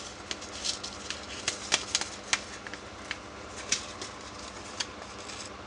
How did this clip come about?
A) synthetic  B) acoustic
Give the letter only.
B